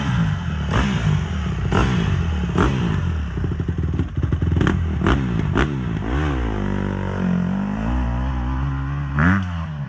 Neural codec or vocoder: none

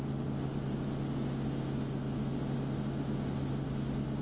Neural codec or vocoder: none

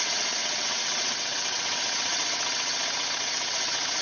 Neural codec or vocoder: vocoder, WaveNeXt